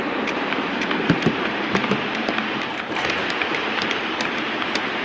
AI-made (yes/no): yes